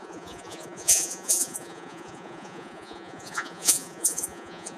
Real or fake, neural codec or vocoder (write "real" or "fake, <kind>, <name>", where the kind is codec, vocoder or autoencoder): fake, vocoder, Vocos